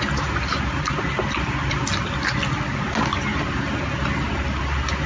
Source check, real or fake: real